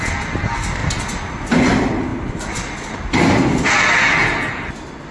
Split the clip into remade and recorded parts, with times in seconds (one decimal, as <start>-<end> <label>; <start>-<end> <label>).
0.0-5.1 recorded